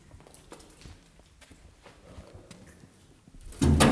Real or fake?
real